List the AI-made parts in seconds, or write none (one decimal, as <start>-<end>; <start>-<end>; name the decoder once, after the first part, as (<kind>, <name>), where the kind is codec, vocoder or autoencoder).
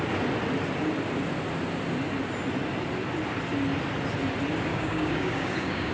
4.7-5.9 (codec, DAC)